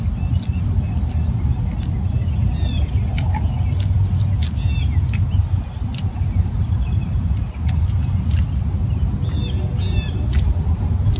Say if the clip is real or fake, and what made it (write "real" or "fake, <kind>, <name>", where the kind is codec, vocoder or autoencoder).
real